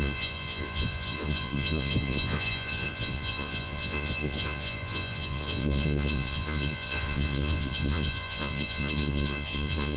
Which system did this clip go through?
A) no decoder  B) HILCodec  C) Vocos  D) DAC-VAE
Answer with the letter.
C